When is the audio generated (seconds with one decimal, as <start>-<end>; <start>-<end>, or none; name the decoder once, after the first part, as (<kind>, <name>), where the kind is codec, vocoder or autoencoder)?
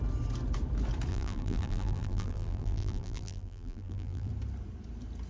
1.1-4.3 (vocoder, BigVGAN v2)